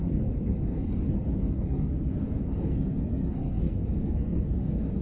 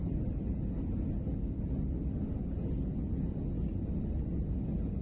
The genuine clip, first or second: second